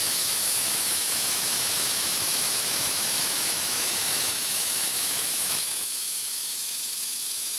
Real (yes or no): no